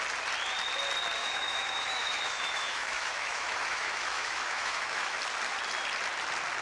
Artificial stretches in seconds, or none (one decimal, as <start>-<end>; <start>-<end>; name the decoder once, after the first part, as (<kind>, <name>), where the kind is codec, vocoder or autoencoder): 1.2-5.2 (autoencoder, DAC-VAE)